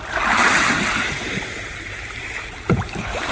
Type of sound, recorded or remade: remade